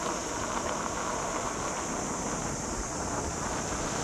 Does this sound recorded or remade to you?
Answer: recorded